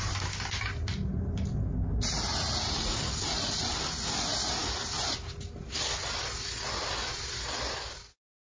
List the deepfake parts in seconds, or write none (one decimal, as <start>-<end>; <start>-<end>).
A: 2.3-3.0